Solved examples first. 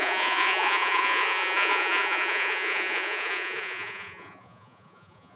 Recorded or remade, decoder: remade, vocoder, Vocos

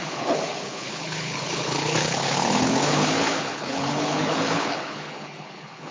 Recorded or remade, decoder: remade, codec, HILCodec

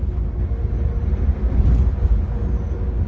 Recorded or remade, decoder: recorded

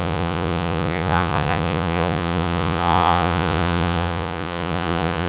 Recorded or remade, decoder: remade, vocoder, Vocos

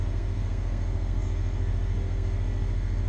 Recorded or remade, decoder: remade, codec, SNAC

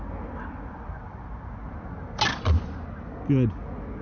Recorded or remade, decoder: recorded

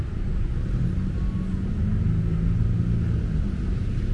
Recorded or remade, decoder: recorded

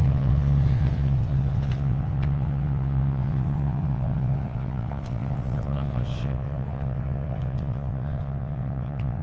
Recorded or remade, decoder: remade, vocoder, WaveNeXt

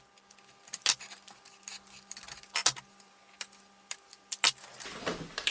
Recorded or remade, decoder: remade, vocoder, BigVGAN v2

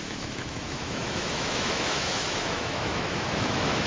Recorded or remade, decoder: remade, autoencoder, DAC-VAE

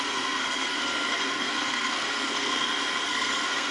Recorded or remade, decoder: remade, codec, SNAC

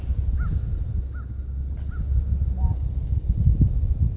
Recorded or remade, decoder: recorded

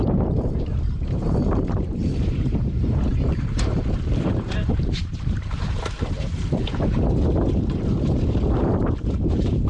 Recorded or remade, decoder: remade, vocoder, BigVGAN v2